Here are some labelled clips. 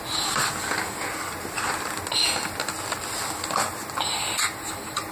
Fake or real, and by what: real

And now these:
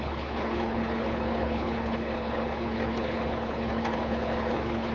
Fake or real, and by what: fake, codec, HILCodec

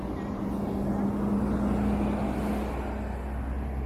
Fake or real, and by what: real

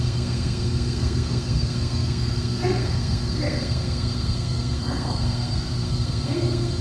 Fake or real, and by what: fake, codec, SNAC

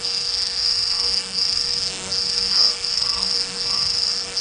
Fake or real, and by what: fake, codec, SNAC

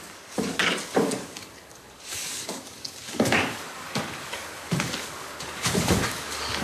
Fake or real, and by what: fake, codec, DAC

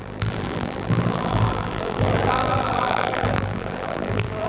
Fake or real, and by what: fake, vocoder, BigVGAN v2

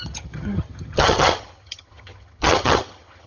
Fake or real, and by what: fake, vocoder, HiFi-GAN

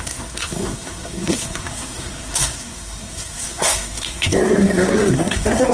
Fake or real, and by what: fake, codec, SNAC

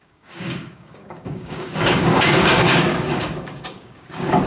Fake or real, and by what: fake, codec, DAC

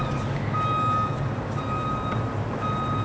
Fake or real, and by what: real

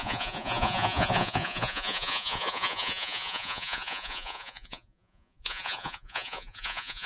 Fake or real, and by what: fake, vocoder, Vocos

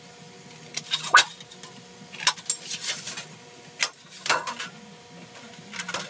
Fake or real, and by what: real